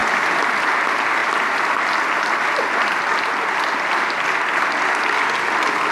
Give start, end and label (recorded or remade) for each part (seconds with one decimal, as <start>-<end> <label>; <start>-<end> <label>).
0.0-5.9 recorded